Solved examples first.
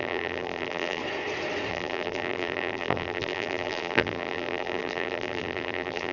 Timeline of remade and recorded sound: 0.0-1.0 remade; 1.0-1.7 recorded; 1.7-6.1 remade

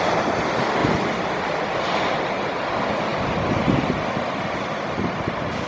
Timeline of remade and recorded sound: 0.0-5.7 recorded

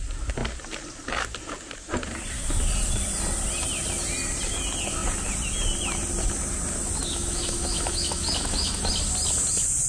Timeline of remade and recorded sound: 0.0-7.0 recorded; 7.0-8.9 remade; 8.9-9.9 recorded

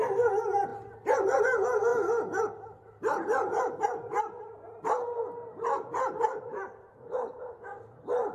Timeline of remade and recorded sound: 0.0-8.3 recorded

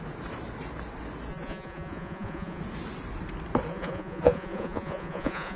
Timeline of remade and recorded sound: 0.0-1.3 recorded; 1.3-2.6 remade; 2.6-3.7 recorded; 3.7-5.6 remade

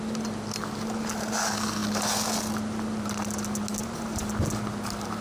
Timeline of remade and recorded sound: 0.0-5.2 recorded

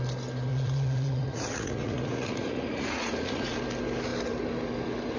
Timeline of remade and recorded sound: 0.0-0.5 recorded; 0.5-3.6 remade; 3.6-5.2 recorded

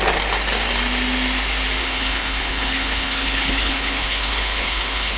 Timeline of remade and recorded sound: 0.0-1.8 recorded; 1.8-5.2 remade